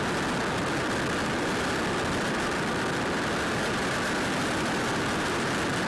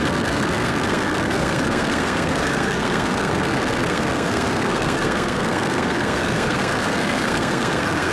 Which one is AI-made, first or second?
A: second